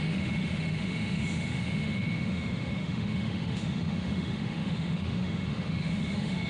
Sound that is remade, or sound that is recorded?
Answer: remade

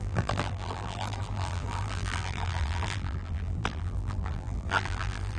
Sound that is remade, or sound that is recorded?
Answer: remade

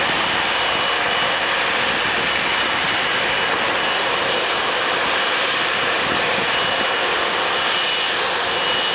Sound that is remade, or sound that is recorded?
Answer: recorded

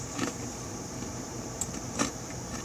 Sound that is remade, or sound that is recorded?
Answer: remade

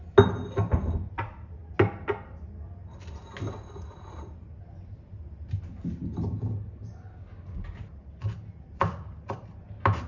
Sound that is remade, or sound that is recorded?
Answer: recorded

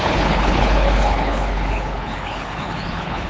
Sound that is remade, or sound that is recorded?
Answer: remade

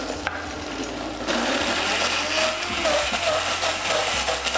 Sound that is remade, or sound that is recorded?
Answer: recorded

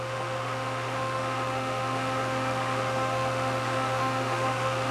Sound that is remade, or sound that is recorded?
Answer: remade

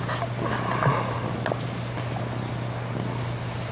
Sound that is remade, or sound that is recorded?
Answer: recorded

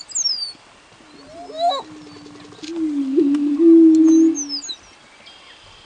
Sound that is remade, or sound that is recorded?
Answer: recorded